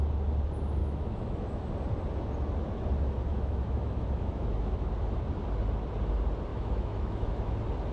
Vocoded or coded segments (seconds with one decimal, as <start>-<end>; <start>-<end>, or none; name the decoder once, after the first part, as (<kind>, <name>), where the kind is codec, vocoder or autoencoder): 0.8-1.7 (autoencoder, DAC-VAE); 3.3-4.9; 6.5-7.5